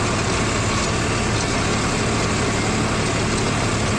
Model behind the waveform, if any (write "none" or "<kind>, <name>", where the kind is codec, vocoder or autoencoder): none